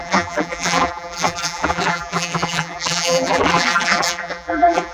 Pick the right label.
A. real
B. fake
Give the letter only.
B